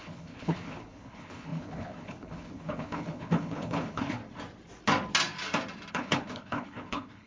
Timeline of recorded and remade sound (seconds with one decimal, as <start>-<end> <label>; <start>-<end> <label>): 0.0-4.2 remade; 4.2-5.9 recorded; 5.9-7.3 remade